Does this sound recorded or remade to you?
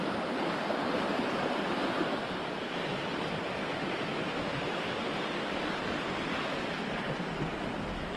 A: recorded